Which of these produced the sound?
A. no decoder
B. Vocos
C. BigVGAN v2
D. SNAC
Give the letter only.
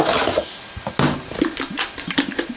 A